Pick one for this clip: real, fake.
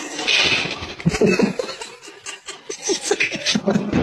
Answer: real